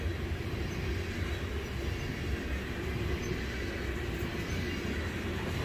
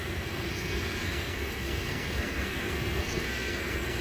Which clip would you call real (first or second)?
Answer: first